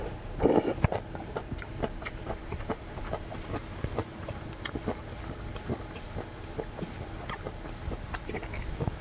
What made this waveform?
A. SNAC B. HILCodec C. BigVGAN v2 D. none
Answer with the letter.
C